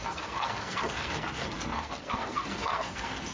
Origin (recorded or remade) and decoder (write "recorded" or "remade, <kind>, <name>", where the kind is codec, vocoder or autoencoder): remade, codec, SNAC